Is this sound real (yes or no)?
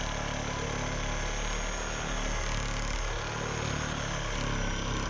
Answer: yes